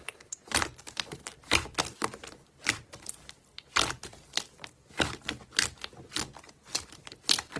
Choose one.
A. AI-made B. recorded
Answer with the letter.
B